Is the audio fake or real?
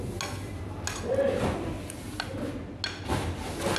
real